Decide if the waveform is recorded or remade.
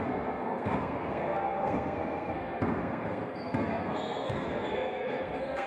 remade